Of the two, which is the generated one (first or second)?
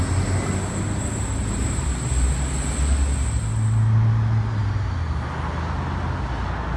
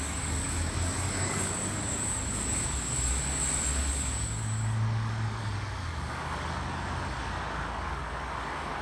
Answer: second